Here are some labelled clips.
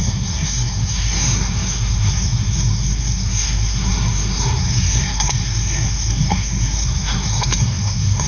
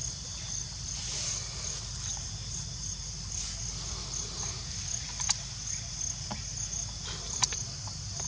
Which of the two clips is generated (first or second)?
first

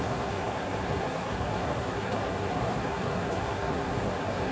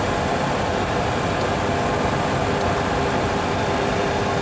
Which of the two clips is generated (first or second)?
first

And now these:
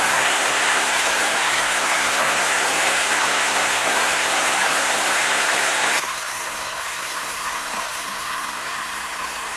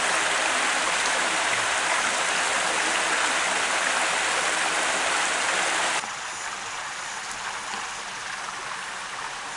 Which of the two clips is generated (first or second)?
first